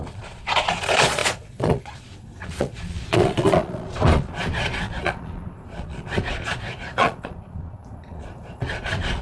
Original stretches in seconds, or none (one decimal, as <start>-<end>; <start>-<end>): none